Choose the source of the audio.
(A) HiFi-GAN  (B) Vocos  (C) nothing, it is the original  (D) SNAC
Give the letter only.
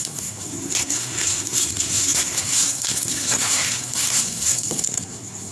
D